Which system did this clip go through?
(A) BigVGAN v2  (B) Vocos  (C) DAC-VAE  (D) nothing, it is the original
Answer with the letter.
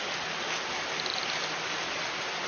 D